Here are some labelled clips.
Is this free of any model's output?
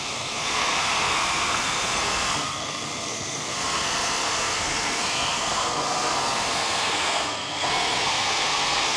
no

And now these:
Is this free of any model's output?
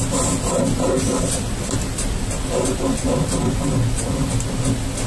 yes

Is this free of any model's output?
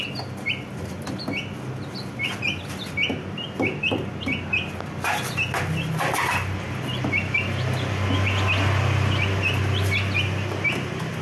yes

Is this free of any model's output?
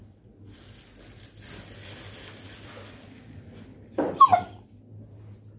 yes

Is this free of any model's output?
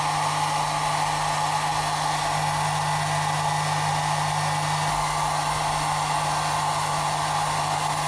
yes